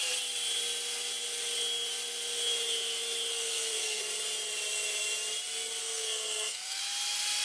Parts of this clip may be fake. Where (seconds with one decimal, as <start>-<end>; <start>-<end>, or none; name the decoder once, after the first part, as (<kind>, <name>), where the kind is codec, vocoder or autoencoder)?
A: 3.3-4.0 (codec, SNAC); 5.8-6.8